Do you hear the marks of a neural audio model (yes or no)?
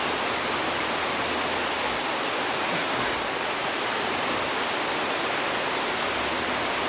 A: no